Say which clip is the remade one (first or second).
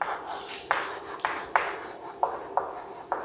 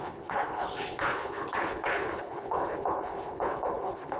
second